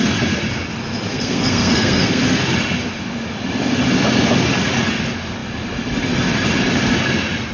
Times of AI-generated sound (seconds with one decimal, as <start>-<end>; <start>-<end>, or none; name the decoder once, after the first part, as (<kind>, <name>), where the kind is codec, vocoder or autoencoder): 1.1-2.2 (codec, SNAC)